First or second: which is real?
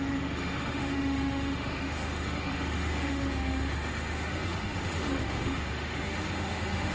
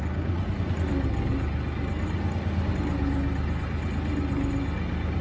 second